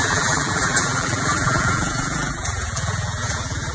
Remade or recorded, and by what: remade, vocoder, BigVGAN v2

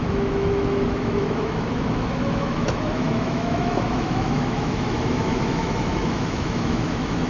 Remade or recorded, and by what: remade, autoencoder, DAC-VAE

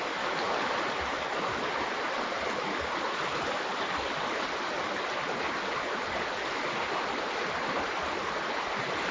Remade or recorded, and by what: recorded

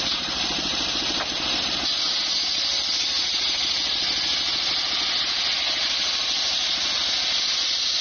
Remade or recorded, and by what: recorded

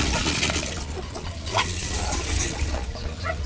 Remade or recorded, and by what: remade, vocoder, Vocos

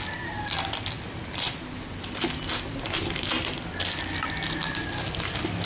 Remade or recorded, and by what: recorded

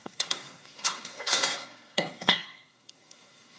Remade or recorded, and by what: remade, codec, SNAC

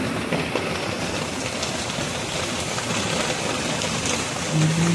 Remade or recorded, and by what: recorded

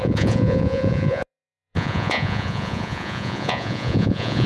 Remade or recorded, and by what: remade, vocoder, Vocos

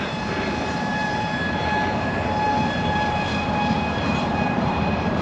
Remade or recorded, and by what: remade, vocoder, BigVGAN v2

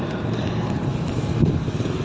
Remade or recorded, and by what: recorded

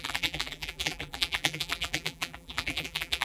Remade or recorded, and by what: remade, vocoder, BigVGAN v2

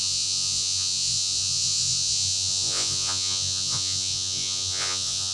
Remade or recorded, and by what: remade, vocoder, Vocos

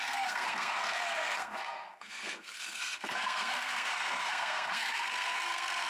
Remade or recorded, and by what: remade, codec, SNAC